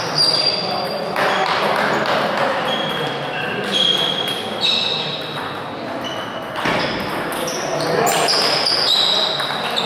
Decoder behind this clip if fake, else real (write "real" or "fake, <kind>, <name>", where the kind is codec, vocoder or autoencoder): real